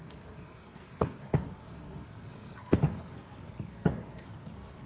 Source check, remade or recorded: remade